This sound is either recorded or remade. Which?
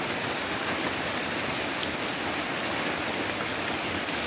recorded